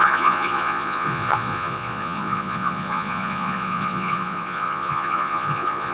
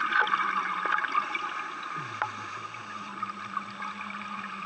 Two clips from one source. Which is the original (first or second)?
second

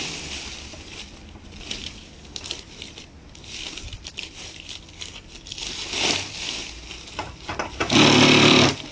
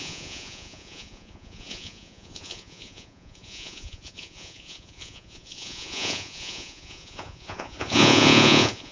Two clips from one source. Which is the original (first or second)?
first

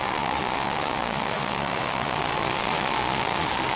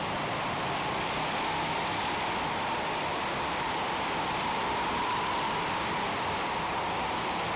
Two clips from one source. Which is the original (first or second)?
second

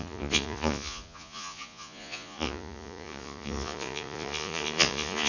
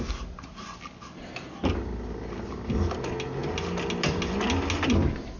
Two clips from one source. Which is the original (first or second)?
second